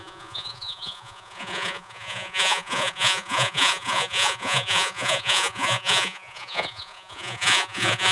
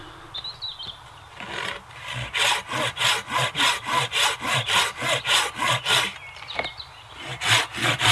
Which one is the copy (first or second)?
first